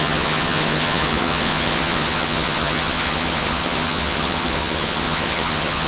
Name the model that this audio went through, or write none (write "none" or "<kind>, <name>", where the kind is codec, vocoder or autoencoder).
vocoder, HiFi-GAN